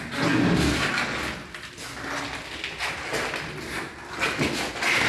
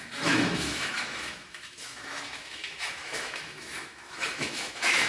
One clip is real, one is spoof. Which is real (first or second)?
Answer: first